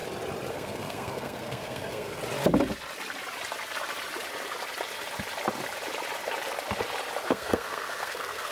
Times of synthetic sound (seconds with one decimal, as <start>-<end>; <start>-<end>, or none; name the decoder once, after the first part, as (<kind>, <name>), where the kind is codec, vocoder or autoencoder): 0.5-2.2 (codec, SNAC); 7.3-8.5